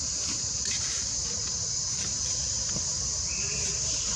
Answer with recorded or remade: remade